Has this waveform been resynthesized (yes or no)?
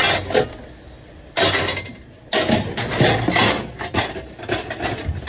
no